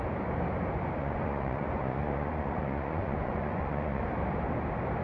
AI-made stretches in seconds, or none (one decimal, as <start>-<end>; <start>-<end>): 1.0-4.0